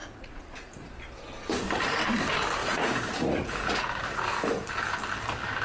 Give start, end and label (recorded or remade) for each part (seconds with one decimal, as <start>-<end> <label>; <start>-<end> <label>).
0.0-0.9 remade; 0.9-2.6 recorded; 2.6-4.3 remade; 4.3-5.6 recorded